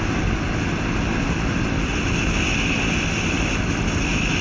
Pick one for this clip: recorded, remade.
recorded